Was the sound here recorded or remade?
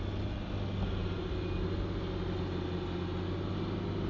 recorded